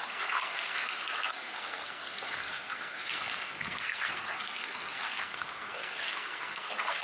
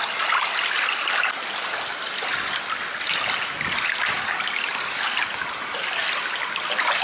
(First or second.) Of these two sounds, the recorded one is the second